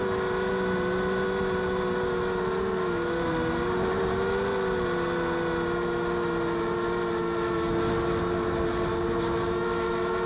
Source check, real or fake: real